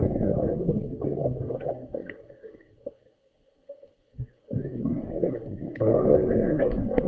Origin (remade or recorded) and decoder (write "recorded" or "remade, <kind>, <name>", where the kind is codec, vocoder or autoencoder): remade, codec, SNAC